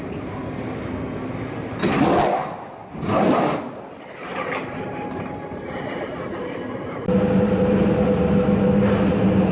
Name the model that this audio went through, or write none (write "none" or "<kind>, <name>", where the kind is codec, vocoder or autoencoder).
none